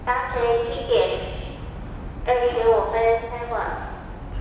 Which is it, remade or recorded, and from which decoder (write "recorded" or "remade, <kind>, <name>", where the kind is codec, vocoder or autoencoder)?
recorded